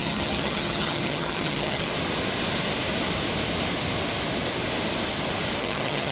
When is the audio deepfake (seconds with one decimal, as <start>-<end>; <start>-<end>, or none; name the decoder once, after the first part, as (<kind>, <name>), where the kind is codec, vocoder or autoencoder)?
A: 0.0-1.9 (vocoder, HiFi-GAN); 5.6-6.1